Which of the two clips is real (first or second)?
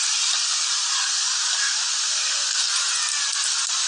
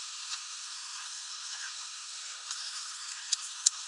first